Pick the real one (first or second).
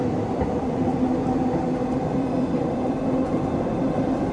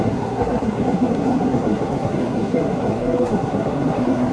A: first